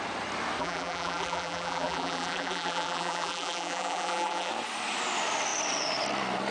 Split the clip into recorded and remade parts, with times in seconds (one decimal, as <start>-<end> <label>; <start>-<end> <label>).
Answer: 0.0-0.6 recorded; 0.6-4.5 remade; 4.5-6.5 recorded